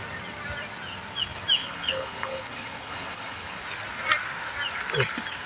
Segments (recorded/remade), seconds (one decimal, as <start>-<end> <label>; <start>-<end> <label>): 0.0-1.6 recorded; 1.6-3.6 remade; 3.6-5.5 recorded